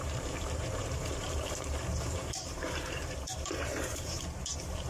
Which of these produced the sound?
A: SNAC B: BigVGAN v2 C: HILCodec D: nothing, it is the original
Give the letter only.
B